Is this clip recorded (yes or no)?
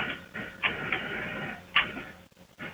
yes